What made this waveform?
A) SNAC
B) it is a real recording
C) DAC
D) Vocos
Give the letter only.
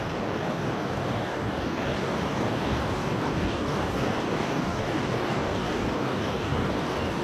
C